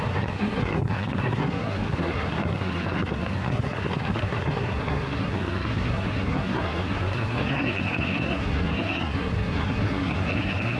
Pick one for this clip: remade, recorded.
remade